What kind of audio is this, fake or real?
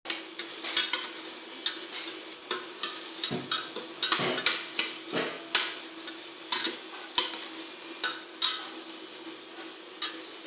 real